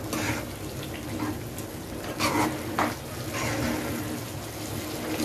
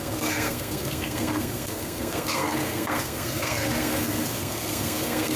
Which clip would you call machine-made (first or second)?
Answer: second